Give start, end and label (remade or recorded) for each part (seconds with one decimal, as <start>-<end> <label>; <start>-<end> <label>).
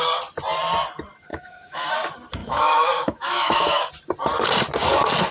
0.0-1.3 recorded; 1.3-1.9 remade; 1.9-2.4 recorded; 2.4-3.9 remade; 3.9-5.3 recorded